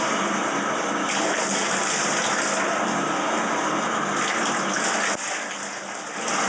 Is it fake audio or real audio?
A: real